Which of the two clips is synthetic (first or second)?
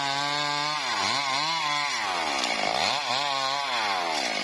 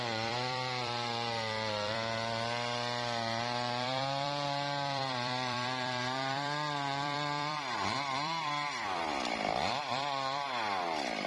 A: second